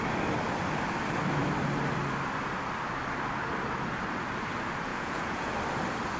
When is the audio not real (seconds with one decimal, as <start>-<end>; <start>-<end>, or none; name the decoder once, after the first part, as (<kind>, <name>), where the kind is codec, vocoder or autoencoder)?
4.9-5.5 (vocoder, Vocos)